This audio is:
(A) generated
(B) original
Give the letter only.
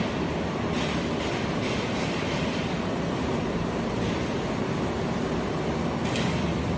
B